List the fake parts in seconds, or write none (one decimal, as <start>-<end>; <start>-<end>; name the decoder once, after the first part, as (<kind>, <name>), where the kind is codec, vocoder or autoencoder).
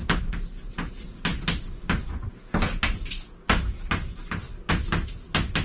none